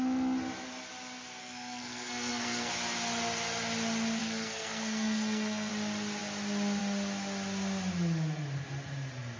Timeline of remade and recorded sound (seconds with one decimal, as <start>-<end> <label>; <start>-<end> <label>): 0.0-1.4 recorded; 1.4-2.7 remade; 2.7-4.2 recorded; 4.2-5.7 remade; 5.7-9.4 recorded